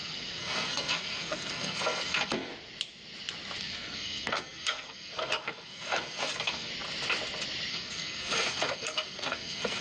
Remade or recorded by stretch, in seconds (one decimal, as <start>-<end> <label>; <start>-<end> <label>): 0.0-2.5 remade; 2.5-3.6 recorded; 3.6-6.7 remade; 6.7-7.7 recorded; 7.7-9.8 remade